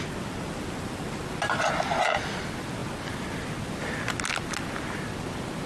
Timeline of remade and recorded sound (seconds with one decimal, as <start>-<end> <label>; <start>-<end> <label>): 0.0-5.7 recorded